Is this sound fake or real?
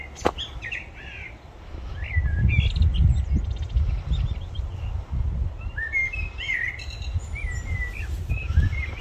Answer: real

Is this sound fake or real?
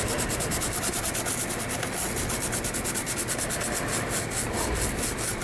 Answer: real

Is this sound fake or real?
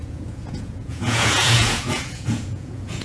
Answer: fake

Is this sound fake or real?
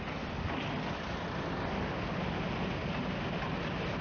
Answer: real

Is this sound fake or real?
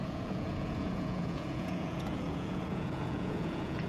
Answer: fake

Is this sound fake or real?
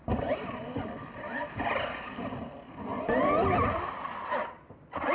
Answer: real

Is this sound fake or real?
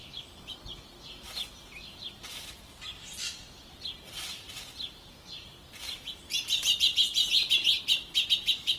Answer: fake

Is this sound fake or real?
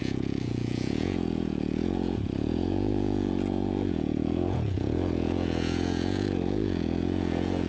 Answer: fake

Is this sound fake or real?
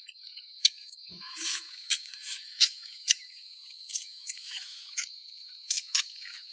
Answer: fake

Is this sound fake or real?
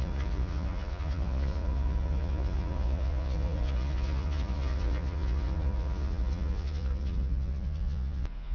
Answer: fake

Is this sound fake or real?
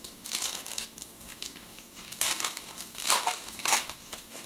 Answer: fake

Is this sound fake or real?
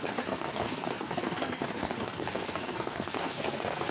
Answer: fake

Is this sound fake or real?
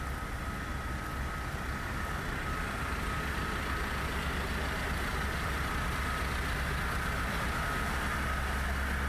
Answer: real